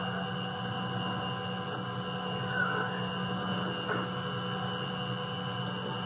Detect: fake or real real